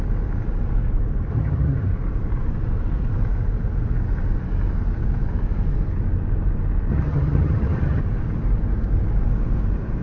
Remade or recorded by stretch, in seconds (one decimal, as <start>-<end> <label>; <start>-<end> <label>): 0.0-1.3 recorded; 1.3-1.9 remade; 1.9-6.9 recorded; 6.9-8.0 remade; 8.0-10.0 recorded